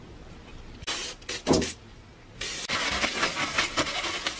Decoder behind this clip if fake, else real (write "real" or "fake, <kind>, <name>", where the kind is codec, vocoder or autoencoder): real